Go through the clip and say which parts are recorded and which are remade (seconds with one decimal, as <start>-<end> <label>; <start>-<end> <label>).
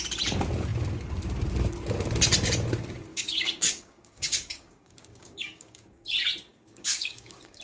0.0-3.1 recorded; 3.1-6.0 remade; 6.0-6.5 recorded; 6.5-7.6 remade